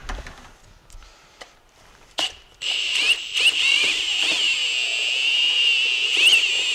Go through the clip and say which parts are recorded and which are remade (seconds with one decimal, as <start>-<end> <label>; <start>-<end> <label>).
0.0-1.3 recorded; 1.3-4.6 remade; 4.6-6.7 recorded